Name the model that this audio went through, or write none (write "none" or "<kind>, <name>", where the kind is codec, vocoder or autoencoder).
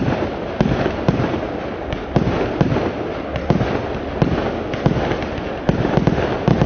none